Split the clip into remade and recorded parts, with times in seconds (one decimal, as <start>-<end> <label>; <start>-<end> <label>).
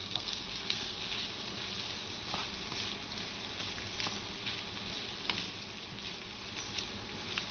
0.0-1.0 remade; 1.0-7.5 recorded